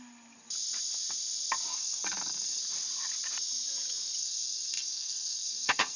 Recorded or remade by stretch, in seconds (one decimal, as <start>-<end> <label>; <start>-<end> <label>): 0.0-1.7 recorded; 1.7-2.6 remade; 2.6-4.2 recorded; 4.2-6.0 remade